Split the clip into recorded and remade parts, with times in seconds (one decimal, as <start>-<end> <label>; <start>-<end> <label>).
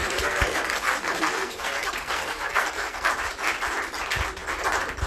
0.0-3.1 remade; 3.1-5.1 recorded